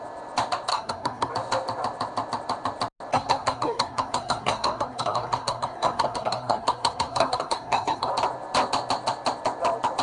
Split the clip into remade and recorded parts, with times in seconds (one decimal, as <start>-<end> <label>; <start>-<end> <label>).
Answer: 0.0-0.7 recorded; 0.7-1.3 remade; 1.3-3.1 recorded; 3.1-8.1 remade; 8.1-10.0 recorded

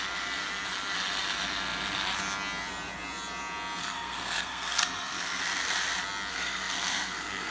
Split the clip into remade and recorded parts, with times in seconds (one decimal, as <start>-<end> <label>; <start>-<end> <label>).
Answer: 0.0-3.8 recorded; 3.8-5.4 remade; 5.4-6.3 recorded; 6.3-7.5 remade